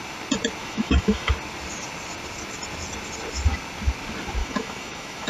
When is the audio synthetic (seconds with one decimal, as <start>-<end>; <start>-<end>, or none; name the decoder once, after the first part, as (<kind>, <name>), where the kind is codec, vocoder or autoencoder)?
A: 0.6-1.3 (autoencoder, DAC-VAE); 4.4-5.3